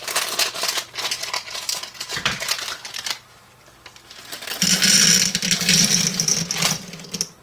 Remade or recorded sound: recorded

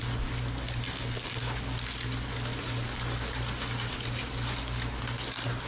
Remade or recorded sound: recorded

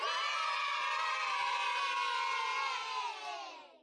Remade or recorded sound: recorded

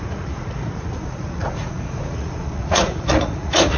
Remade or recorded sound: remade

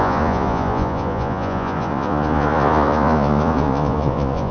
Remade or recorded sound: remade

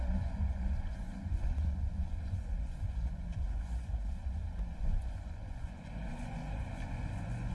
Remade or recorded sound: remade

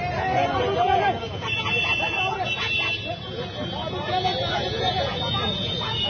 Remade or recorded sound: remade